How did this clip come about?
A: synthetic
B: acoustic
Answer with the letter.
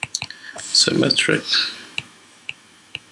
A